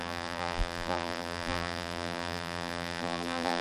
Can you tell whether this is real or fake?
fake